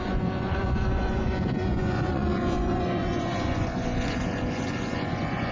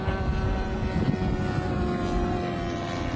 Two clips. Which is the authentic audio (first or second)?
second